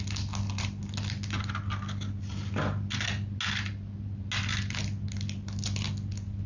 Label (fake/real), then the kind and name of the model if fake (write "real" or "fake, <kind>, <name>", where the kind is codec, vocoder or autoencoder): real